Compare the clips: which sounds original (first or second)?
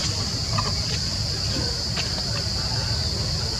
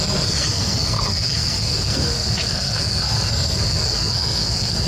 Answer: first